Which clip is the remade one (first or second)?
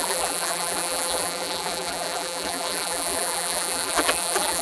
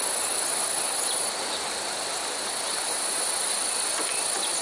first